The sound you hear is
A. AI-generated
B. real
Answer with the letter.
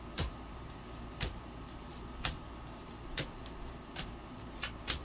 A